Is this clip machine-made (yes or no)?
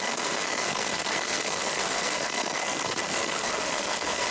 yes